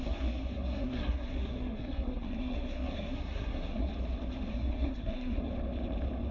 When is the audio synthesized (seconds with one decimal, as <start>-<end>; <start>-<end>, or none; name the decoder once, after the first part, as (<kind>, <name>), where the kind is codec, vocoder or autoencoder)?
0.0-3.9 (codec, SNAC); 4.5-5.5